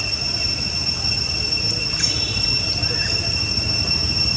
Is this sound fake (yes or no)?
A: no